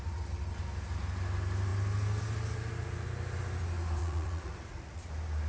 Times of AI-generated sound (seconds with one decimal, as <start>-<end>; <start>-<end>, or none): 4.0-5.1